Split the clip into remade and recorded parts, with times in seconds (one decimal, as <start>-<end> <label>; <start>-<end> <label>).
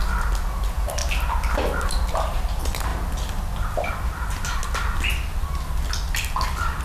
0.0-6.8 recorded